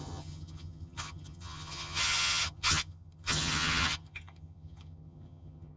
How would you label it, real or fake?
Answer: fake